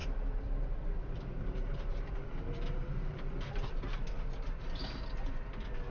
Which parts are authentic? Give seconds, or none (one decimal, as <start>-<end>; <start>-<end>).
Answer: 2.3-2.8